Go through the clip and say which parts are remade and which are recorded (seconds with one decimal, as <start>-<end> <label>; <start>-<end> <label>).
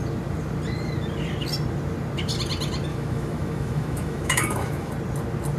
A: 0.0-2.9 recorded; 2.9-4.9 remade; 4.9-5.6 recorded